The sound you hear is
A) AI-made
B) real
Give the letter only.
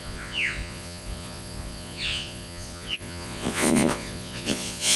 A